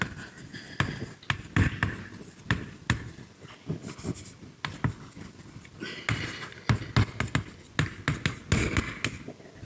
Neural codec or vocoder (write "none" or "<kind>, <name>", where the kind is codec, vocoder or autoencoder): none